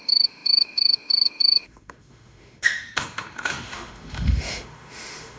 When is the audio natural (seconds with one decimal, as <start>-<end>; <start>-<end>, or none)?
none